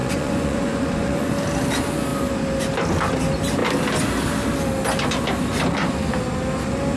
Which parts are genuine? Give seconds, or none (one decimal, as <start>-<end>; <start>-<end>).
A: 1.3-7.0